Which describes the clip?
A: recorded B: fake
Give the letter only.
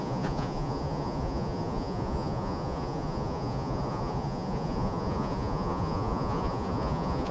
B